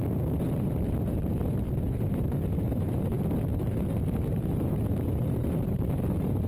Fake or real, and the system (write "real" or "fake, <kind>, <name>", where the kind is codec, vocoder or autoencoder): fake, vocoder, BigVGAN v2